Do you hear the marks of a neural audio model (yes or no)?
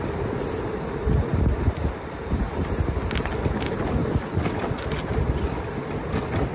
no